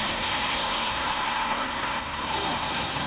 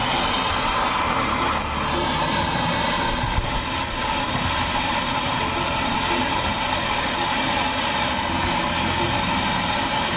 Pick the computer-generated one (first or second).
first